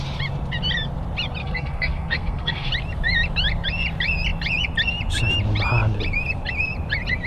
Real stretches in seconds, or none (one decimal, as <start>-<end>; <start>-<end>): 0.0-1.4; 2.7-7.3